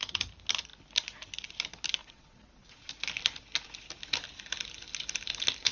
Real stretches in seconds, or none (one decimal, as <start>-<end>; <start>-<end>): 0.0-2.0; 2.9-5.7